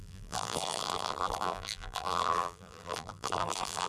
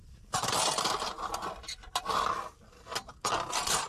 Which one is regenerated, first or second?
first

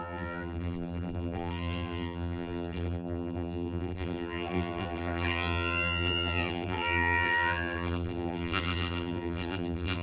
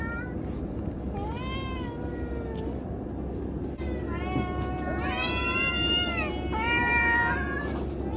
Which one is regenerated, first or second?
first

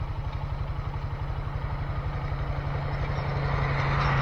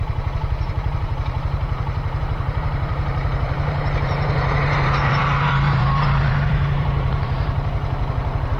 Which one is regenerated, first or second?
second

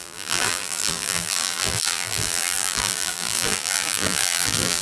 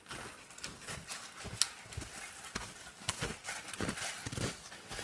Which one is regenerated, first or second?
first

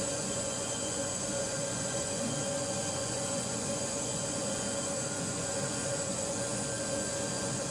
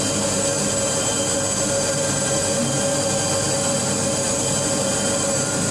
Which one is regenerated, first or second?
first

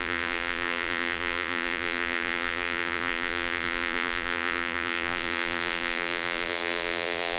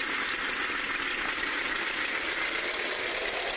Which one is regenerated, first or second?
first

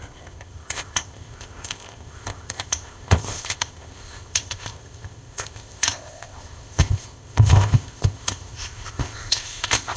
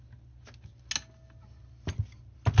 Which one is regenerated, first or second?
first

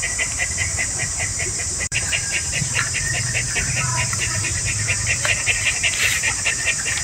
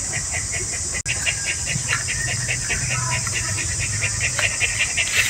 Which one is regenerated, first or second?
first